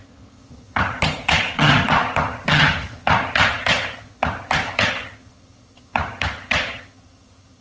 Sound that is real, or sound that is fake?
fake